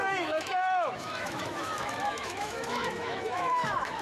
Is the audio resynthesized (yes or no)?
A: yes